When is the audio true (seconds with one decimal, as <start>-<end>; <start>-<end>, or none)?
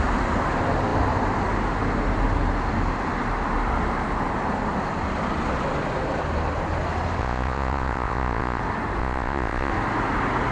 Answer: 0.0-7.2; 8.6-9.0; 9.7-10.5